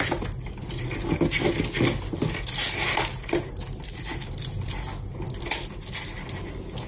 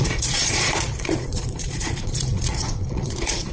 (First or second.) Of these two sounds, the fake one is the second